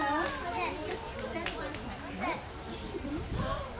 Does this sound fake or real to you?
real